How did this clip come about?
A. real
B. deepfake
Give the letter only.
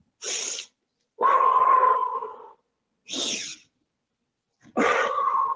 A